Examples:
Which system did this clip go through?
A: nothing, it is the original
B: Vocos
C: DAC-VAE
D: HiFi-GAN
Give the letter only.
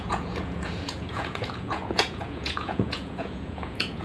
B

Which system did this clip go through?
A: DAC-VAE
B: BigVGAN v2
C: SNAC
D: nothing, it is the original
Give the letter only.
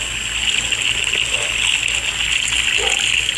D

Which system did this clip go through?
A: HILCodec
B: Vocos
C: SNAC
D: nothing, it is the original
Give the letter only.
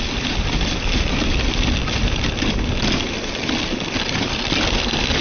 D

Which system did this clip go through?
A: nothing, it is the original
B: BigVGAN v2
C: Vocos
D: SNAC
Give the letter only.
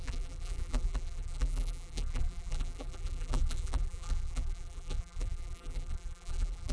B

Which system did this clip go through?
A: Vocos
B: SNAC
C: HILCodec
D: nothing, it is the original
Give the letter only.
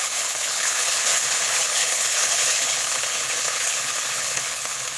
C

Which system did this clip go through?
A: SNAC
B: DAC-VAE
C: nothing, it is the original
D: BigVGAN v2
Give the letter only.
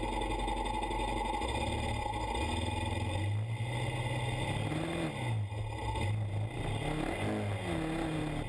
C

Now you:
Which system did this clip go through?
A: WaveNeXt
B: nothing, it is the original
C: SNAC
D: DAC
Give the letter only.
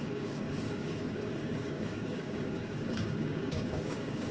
D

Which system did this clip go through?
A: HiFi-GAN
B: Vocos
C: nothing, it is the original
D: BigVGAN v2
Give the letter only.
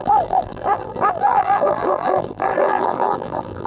D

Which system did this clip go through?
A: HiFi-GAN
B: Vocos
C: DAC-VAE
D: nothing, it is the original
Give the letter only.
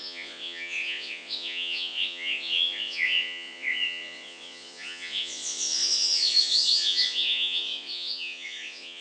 B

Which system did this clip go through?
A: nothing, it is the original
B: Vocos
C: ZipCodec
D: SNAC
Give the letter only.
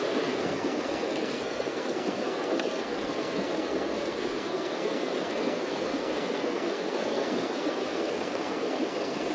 D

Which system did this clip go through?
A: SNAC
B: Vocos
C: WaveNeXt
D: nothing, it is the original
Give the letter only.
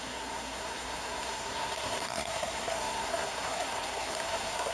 A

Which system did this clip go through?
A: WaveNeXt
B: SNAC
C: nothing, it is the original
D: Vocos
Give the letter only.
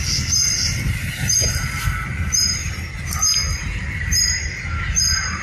C